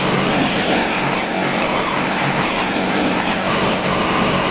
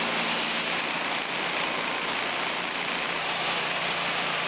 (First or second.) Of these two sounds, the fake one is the first